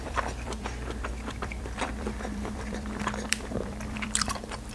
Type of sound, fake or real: fake